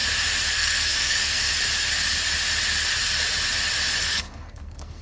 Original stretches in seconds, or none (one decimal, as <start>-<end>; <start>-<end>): 0.0-0.5; 1.5-4.0